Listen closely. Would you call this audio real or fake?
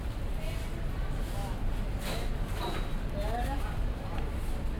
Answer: real